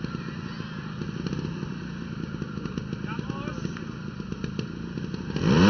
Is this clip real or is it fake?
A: real